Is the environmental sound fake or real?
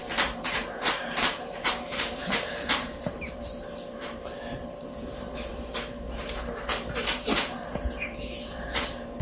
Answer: fake